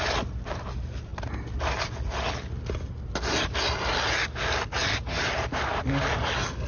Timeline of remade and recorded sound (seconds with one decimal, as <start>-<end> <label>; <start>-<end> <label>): 0.0-6.7 recorded